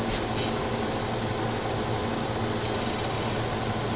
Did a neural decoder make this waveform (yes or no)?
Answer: no